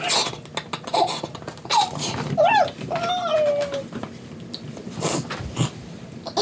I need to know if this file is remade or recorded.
recorded